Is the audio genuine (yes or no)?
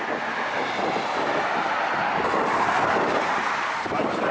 yes